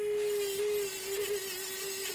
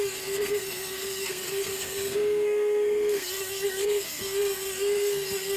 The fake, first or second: second